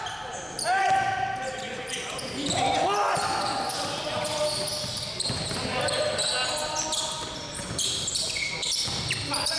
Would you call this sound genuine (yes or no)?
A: yes